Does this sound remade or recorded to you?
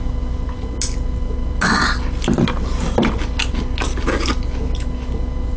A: recorded